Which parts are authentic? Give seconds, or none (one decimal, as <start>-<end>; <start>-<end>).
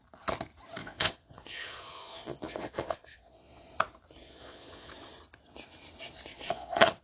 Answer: 0.0-0.8; 3.7-4.2; 4.9-6.3